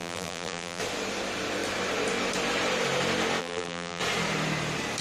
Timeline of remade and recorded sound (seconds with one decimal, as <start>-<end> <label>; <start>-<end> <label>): 0.0-0.8 remade; 0.8-3.4 recorded; 3.4-4.0 remade; 4.0-5.0 recorded